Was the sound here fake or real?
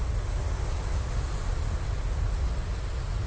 real